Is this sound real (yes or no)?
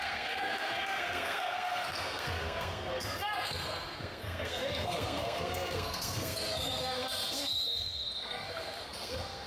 no